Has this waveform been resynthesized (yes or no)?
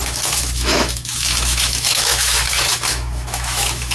yes